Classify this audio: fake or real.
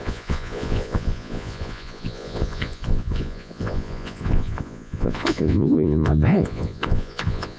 fake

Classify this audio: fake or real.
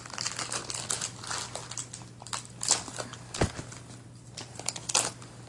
real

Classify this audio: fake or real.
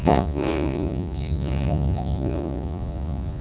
fake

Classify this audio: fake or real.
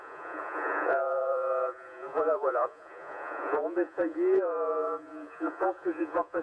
fake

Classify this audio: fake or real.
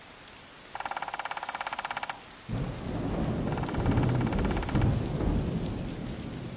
real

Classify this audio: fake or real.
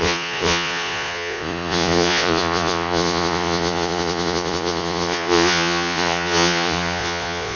fake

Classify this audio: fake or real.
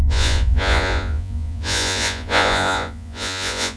fake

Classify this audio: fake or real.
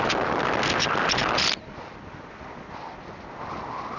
real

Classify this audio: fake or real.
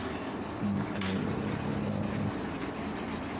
real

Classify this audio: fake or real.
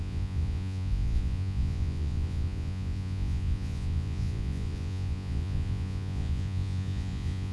fake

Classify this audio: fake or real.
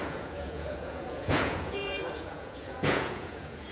fake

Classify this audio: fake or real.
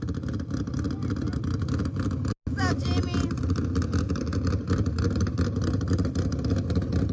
real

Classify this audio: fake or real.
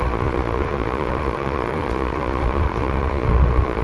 fake